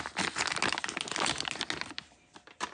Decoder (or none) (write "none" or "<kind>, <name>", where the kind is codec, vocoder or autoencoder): none